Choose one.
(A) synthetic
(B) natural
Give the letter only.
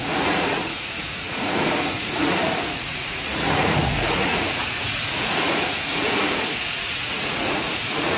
A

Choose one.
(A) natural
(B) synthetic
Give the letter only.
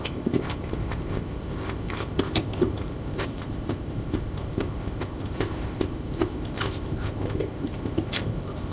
B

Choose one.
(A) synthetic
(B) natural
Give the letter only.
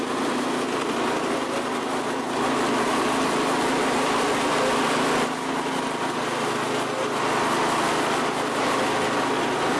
B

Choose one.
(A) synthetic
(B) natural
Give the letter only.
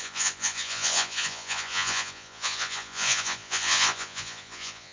A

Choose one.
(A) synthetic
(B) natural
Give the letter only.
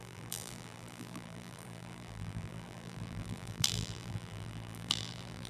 A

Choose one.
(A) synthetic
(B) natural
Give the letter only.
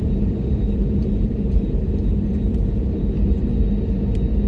A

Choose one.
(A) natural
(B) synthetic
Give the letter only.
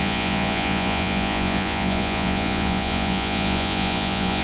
B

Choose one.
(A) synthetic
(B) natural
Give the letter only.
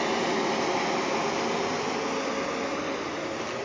B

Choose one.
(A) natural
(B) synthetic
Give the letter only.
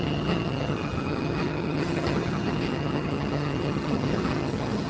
B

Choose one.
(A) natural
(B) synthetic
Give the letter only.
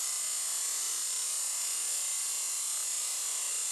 A